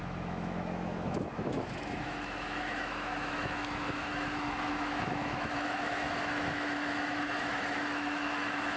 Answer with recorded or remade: remade